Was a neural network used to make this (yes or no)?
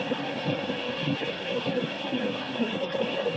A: yes